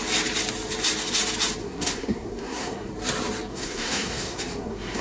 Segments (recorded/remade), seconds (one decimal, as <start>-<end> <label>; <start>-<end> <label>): 0.0-1.6 recorded; 1.6-2.9 remade; 2.9-3.5 recorded; 3.5-5.0 remade